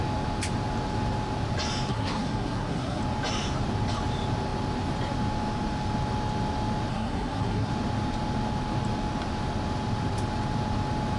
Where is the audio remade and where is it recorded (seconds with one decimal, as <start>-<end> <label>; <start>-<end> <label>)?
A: 0.0-1.9 recorded; 1.9-3.0 remade; 3.0-6.9 recorded; 6.9-7.7 remade; 7.7-11.2 recorded